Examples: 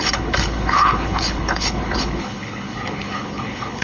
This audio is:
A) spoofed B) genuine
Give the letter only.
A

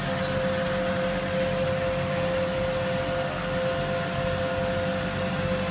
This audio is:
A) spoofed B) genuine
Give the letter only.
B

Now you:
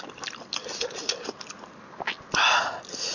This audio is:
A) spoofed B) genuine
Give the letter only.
B